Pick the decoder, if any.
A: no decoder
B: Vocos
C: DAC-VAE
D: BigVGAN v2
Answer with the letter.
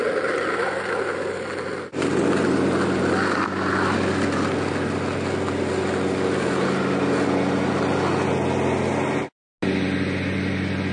A